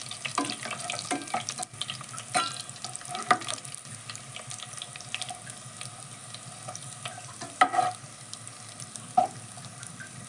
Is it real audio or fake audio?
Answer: real